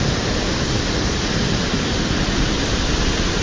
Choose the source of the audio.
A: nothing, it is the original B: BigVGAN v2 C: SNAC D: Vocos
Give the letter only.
B